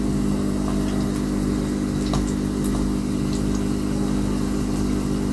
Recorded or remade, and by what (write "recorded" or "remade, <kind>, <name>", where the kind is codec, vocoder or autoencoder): recorded